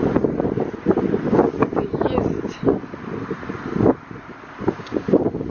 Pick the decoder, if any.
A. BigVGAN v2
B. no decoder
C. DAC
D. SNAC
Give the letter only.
B